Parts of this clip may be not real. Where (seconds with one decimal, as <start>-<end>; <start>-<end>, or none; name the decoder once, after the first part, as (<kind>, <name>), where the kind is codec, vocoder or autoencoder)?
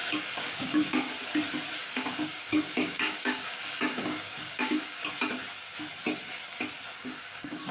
0.0-1.1 (codec, DAC); 1.8-5.1; 7.0-7.7